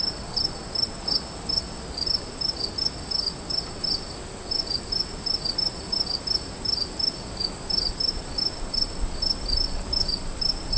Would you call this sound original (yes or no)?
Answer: yes